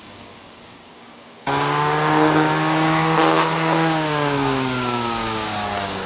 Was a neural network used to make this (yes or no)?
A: yes